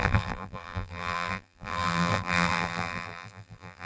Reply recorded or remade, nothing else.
remade